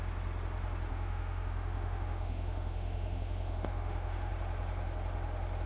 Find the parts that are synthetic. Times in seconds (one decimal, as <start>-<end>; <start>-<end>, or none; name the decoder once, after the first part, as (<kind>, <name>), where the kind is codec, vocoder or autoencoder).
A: 0.9-4.3 (autoencoder, DAC-VAE)